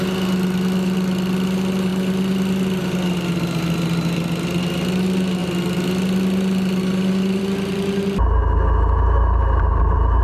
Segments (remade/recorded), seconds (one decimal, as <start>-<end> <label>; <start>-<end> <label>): 0.0-10.2 recorded